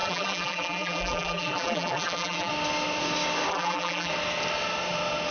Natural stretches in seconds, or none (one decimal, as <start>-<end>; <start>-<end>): 2.5-3.5; 4.1-5.3